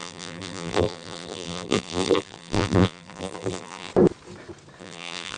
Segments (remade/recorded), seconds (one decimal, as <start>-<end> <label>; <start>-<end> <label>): 0.0-3.9 remade; 3.9-4.8 recorded; 4.8-5.4 remade

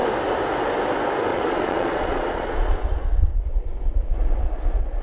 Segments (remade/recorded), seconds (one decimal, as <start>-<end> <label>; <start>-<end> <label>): 0.0-1.3 recorded; 1.3-3.4 remade; 3.4-5.0 recorded

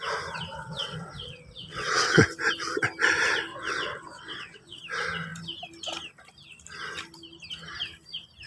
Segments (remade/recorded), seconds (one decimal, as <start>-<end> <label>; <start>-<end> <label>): 0.0-0.5 recorded; 0.5-2.2 remade; 2.2-3.5 recorded; 3.5-4.8 remade; 4.8-8.5 recorded

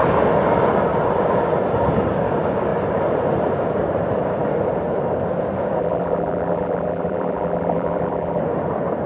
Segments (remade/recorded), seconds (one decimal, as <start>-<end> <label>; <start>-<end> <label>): 0.0-5.8 recorded; 5.8-8.4 remade; 8.4-9.1 recorded

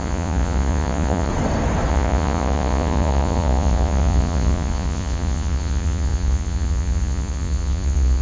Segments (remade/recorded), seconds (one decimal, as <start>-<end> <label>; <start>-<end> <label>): 0.0-1.3 remade; 1.3-1.9 recorded; 1.9-8.2 remade